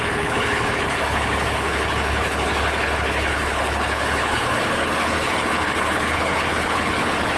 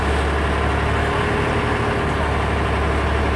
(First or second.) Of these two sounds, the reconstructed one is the first